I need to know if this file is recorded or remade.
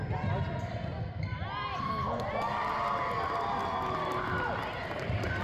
recorded